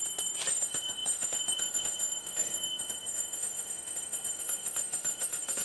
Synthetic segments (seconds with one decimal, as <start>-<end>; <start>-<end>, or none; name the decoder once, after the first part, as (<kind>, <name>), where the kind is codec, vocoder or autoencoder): 0.5-5.6 (autoencoder, DAC-VAE)